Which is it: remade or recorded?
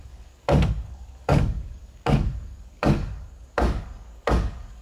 remade